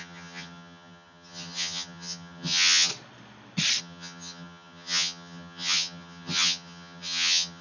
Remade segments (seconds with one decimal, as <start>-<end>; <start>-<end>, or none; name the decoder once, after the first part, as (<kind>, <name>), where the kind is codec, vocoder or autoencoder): 0.0-2.9 (vocoder, HiFi-GAN); 3.8-7.6